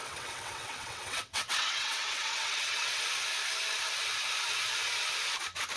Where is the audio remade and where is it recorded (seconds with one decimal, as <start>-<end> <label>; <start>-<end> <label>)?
0.0-3.0 remade; 3.0-5.8 recorded